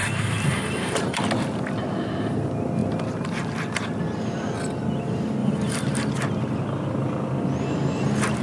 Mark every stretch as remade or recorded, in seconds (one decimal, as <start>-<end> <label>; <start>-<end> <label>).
0.0-1.2 remade; 1.2-5.4 recorded; 5.4-6.1 remade; 6.1-8.4 recorded